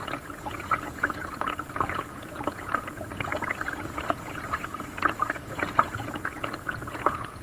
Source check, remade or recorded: remade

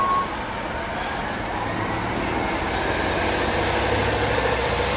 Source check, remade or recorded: recorded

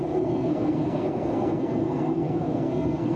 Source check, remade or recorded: remade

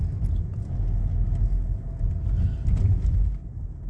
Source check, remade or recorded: recorded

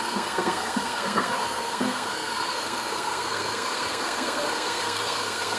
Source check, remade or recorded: remade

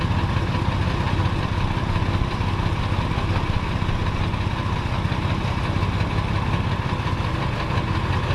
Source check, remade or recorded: recorded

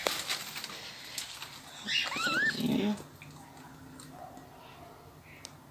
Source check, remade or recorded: recorded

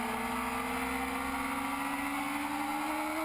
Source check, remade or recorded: recorded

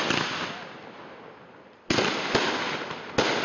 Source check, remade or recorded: recorded